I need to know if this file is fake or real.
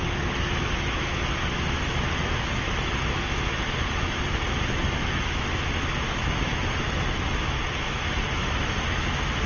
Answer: fake